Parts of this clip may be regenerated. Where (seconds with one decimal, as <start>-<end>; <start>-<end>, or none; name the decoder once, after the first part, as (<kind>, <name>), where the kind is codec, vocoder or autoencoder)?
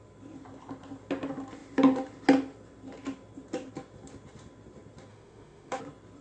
5.1-5.8 (autoencoder, DAC-VAE)